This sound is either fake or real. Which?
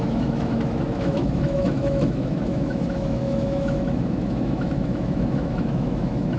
fake